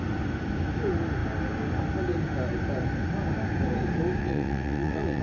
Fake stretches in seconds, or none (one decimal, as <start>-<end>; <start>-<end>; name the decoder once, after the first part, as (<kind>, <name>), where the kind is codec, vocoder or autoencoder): 4.2-5.2 (vocoder, WaveNeXt)